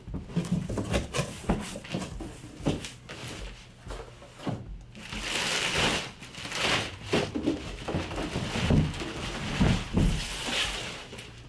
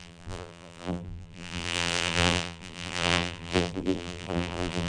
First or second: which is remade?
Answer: second